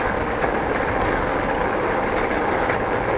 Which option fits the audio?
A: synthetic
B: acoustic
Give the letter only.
B